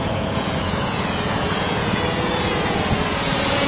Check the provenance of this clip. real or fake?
fake